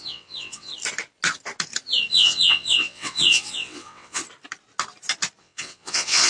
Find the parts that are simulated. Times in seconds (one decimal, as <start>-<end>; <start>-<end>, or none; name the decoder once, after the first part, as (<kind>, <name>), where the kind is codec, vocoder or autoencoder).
0.0-0.7 (vocoder, WaveNeXt); 2.1-4.2; 5.4-6.3